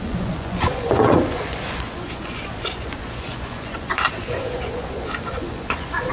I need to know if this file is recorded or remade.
remade